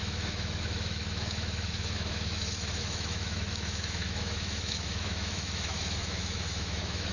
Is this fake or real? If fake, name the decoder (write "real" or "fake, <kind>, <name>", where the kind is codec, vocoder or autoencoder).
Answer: fake, autoencoder, DAC-VAE